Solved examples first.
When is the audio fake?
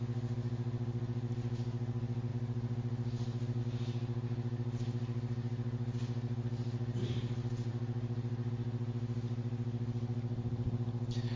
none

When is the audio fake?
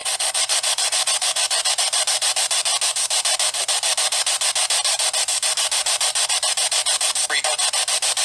0.0-1.7 (vocoder, Vocos)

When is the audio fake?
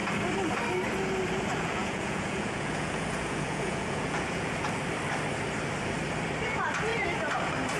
1.5-4.8 (vocoder, Vocos)